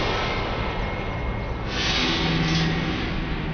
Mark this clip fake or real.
real